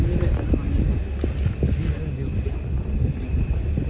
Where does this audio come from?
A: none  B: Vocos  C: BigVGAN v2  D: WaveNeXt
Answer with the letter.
A